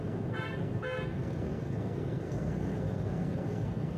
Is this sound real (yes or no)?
no